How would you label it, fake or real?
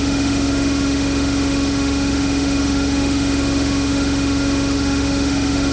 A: fake